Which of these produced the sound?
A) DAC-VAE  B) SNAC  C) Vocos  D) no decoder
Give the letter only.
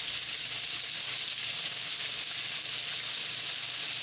D